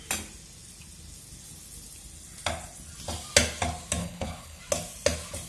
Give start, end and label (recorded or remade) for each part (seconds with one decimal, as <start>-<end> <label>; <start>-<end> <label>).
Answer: 0.0-4.0 recorded; 4.0-4.6 remade; 4.6-5.5 recorded